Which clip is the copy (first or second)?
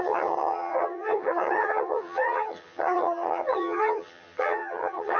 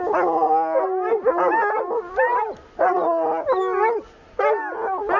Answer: first